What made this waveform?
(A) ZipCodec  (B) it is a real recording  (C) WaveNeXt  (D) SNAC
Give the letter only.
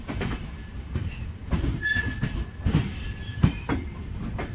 B